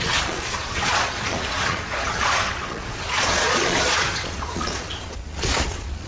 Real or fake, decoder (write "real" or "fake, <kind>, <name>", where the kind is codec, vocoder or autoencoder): fake, vocoder, Vocos